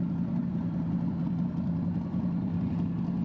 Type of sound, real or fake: real